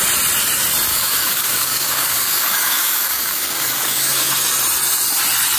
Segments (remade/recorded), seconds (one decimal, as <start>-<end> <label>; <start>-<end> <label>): 0.0-0.9 recorded; 0.9-4.3 remade; 4.3-5.6 recorded